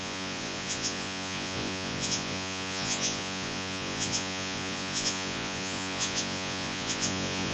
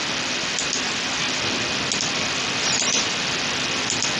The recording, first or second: second